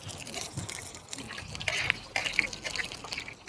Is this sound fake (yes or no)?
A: no